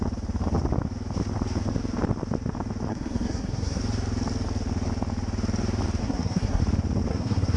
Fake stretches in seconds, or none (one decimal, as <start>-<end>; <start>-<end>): 2.9-3.8; 6.0-6.6; 7.1-7.6